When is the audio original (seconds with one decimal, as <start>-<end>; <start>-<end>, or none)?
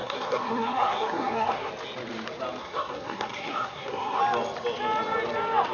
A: 1.7-2.6; 4.2-5.7